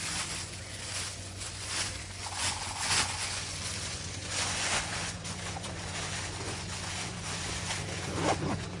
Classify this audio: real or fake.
fake